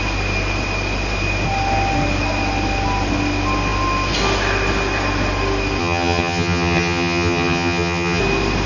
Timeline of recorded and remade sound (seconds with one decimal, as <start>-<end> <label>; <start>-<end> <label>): 0.0-5.8 recorded; 5.8-8.2 remade; 8.2-8.7 recorded